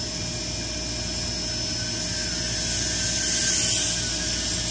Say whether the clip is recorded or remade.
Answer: recorded